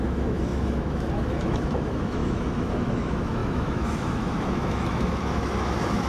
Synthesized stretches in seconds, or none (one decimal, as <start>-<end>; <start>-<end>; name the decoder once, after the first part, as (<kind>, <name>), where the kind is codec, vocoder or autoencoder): 0.0-6.1 (autoencoder, DAC-VAE)